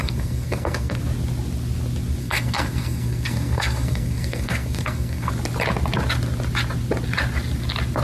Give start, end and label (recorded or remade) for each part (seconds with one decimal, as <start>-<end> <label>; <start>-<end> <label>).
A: 0.0-1.0 remade; 1.0-2.2 recorded; 2.2-5.3 remade; 5.3-8.0 recorded